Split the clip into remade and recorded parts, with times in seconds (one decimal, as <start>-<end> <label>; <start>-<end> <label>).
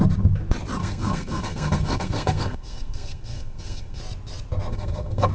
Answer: 0.0-0.8 recorded; 0.8-4.0 remade; 4.0-4.7 recorded; 4.7-5.3 remade